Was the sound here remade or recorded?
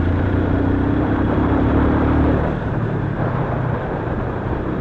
remade